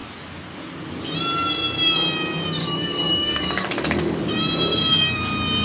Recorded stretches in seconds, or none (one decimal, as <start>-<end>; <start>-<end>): 0.0-2.6; 4.2-5.6